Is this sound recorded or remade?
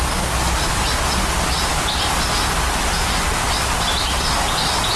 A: recorded